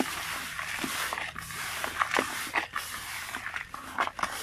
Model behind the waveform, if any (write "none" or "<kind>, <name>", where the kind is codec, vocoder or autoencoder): none